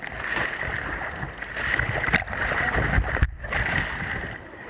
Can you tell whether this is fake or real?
real